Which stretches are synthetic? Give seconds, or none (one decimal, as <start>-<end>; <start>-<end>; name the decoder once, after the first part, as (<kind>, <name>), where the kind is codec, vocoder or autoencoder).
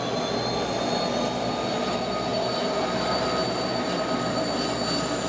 none